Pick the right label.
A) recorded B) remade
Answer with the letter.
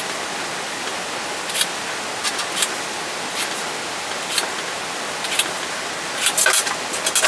A